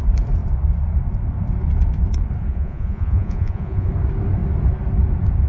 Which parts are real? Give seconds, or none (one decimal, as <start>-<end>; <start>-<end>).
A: 0.0-2.5; 3.9-5.5